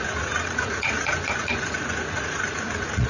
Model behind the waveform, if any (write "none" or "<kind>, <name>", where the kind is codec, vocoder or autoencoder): vocoder, Vocos